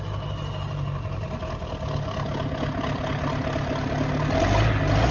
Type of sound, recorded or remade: recorded